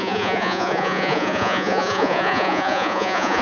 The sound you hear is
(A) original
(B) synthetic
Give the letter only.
B